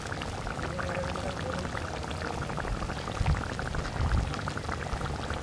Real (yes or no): yes